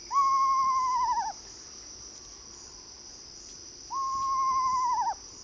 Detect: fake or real real